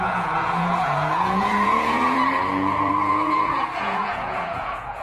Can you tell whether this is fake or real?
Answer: fake